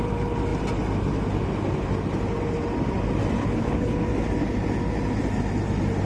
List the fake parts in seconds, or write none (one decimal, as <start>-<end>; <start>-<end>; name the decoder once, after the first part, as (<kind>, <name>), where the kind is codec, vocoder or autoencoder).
3.4-4.0 (codec, HILCodec)